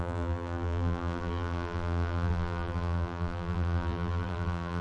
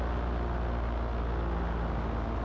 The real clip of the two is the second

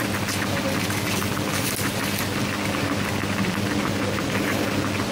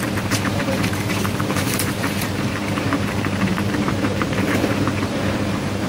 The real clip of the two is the first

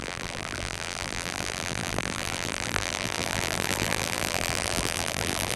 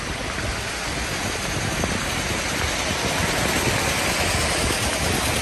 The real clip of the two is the second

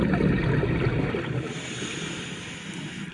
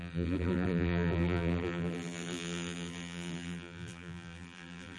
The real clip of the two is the first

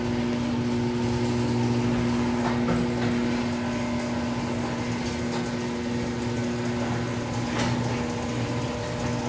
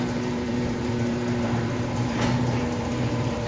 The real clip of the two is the first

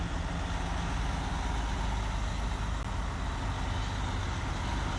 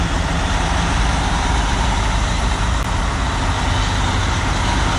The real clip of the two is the first